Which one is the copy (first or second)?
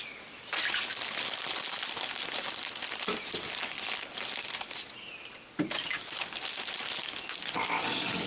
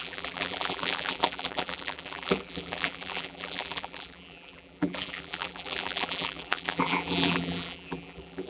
second